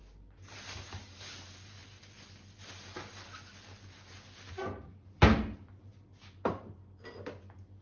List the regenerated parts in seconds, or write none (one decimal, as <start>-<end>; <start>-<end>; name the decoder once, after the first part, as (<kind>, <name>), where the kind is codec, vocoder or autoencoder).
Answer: none